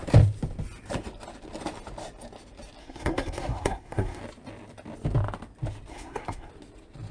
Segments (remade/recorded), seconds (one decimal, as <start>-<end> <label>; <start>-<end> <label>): 0.0-2.8 recorded; 2.8-4.2 remade; 4.2-5.9 recorded; 5.9-6.5 remade; 6.5-7.1 recorded